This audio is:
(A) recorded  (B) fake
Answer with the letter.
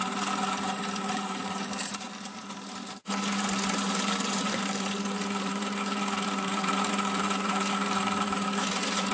B